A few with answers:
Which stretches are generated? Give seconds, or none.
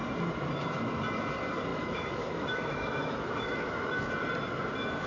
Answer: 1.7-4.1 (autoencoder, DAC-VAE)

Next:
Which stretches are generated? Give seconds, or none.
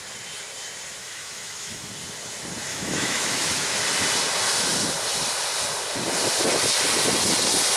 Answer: 1.0-1.9 (autoencoder, DAC-VAE); 2.7-3.8